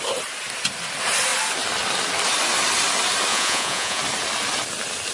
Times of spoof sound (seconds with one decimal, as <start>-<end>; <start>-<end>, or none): 3.3-4.0